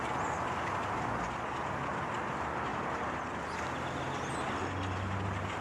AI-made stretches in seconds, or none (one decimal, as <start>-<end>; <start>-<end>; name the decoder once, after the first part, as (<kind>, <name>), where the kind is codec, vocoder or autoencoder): none